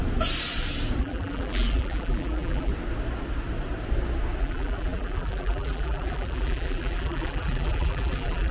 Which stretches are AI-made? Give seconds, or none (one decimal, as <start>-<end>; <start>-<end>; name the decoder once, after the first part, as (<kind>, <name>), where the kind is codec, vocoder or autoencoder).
1.0-2.7 (vocoder, BigVGAN v2); 4.4-8.5